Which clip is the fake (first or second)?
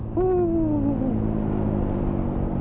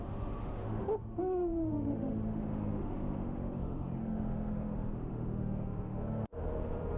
second